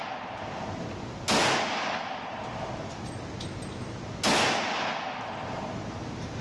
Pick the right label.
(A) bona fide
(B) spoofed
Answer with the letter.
A